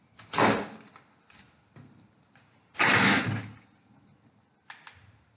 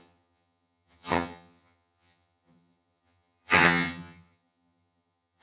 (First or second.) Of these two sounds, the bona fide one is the first